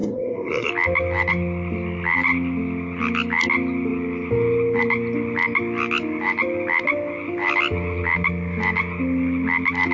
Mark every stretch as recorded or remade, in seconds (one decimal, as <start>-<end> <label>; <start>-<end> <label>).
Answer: 0.0-0.7 remade; 0.7-9.9 recorded